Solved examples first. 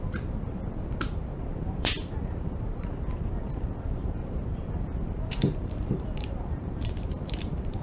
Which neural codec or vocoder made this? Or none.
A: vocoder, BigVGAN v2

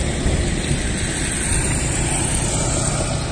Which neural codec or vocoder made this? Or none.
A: none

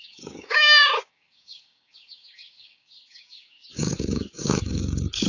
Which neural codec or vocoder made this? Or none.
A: codec, DAC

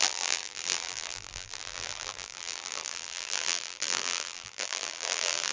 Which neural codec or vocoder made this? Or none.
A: vocoder, BigVGAN v2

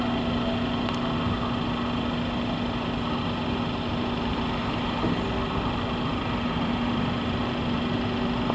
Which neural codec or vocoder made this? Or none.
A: none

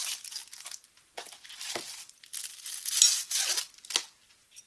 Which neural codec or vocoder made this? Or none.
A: none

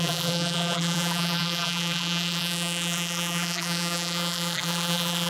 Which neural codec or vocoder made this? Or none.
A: vocoder, BigVGAN v2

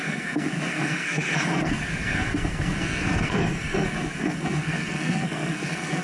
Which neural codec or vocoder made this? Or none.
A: codec, SNAC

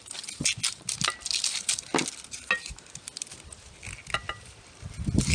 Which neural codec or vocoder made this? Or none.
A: none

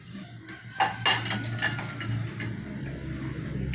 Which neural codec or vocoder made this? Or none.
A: none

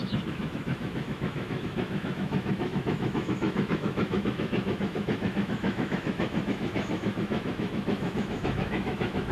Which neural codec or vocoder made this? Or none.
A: autoencoder, DAC-VAE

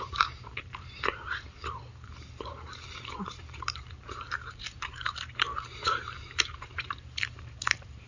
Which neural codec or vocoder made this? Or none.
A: vocoder, BigVGAN v2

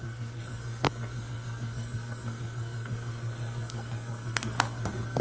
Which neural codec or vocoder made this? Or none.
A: codec, SNAC